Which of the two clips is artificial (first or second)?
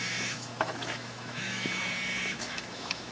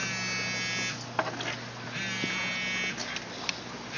first